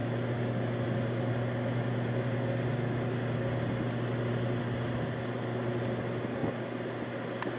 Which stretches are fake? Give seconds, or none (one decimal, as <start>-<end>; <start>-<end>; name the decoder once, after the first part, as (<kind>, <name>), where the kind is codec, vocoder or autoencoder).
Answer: none